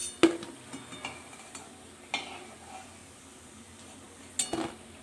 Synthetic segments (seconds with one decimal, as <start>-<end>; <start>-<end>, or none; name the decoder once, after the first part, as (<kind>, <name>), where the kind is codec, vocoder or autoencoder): none